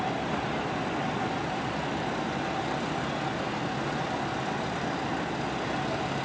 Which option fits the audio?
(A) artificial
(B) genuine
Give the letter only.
B